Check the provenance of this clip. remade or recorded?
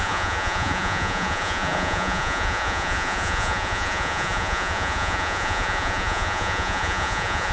remade